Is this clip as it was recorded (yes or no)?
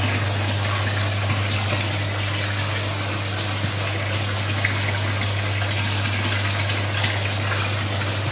yes